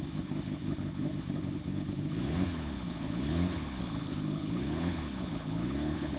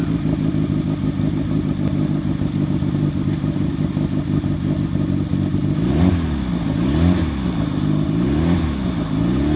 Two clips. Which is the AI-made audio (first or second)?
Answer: first